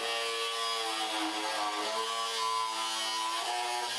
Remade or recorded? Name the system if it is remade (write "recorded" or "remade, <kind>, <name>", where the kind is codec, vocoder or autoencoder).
recorded